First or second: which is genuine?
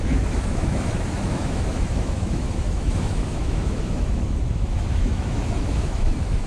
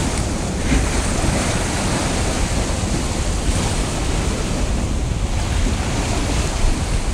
second